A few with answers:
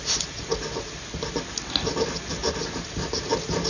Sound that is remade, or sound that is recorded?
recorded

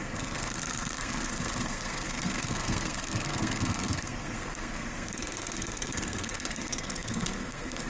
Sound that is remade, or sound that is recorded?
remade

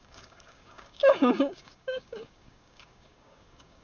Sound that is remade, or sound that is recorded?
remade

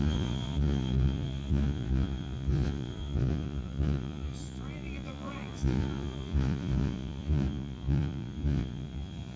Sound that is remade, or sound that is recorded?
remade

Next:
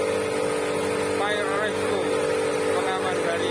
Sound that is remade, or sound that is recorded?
recorded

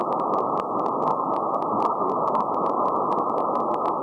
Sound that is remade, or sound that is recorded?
recorded